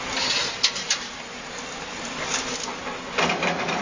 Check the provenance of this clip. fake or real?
real